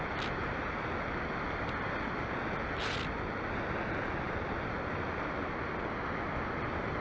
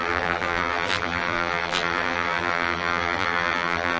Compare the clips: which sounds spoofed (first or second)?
second